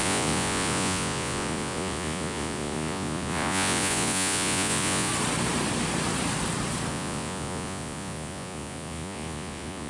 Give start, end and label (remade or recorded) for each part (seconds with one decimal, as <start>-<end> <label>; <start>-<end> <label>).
0.0-5.1 remade; 5.1-6.9 recorded; 6.9-9.9 remade